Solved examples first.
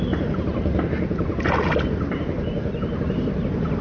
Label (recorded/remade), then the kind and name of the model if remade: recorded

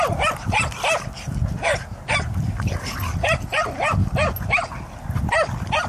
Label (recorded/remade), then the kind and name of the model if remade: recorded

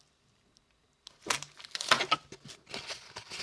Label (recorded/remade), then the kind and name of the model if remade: recorded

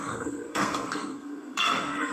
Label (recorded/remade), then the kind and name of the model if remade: remade, codec, SNAC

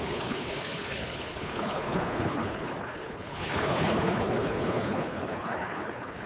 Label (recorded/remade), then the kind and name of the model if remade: remade, codec, HILCodec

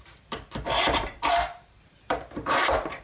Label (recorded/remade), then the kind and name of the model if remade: remade, vocoder, BigVGAN v2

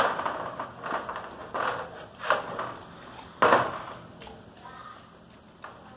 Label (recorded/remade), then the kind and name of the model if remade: recorded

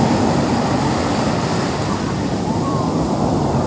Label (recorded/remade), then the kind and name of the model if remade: remade, vocoder, BigVGAN v2